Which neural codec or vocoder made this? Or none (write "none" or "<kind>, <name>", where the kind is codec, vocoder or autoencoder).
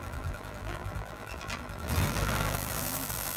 vocoder, BigVGAN v2